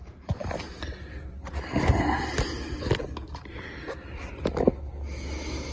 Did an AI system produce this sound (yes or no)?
no